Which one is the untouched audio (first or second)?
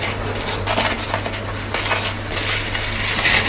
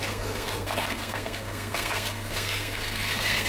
first